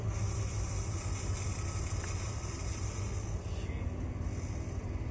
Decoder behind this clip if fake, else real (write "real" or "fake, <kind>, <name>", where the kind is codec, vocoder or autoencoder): real